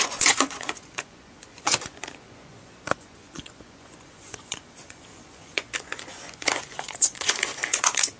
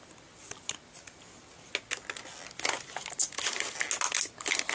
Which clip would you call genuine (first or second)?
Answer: second